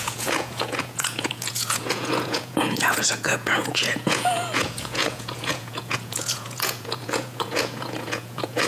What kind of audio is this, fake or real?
fake